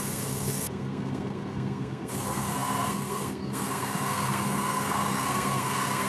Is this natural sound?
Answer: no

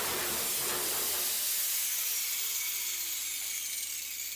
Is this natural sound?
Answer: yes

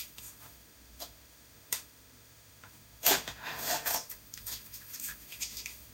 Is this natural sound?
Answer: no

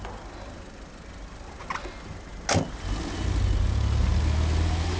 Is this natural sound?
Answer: yes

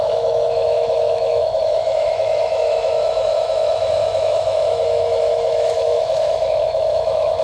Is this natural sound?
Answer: no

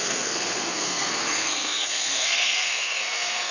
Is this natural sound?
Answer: no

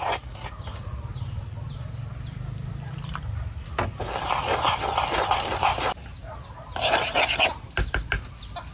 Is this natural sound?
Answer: yes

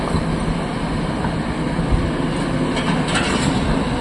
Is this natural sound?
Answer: yes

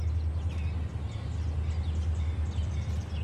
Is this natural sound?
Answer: yes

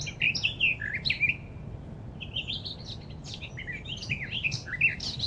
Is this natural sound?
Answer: yes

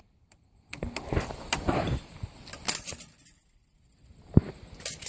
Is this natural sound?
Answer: yes